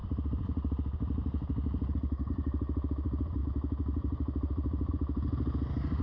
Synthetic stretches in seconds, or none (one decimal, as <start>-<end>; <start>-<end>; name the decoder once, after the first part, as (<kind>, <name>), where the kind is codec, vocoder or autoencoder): none

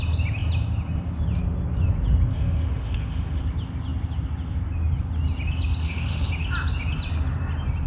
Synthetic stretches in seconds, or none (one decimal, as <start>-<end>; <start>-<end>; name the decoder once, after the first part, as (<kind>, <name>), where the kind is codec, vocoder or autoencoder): 2.3-3.4 (autoencoder, DAC-VAE); 5.8-6.3

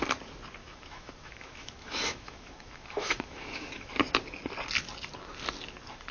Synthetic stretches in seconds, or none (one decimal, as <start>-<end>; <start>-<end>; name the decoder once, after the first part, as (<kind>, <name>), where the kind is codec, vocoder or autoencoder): 0.6-3.9 (autoencoder, DAC-VAE)